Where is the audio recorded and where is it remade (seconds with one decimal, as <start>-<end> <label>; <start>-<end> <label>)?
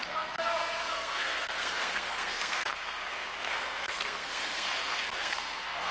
0.0-5.9 remade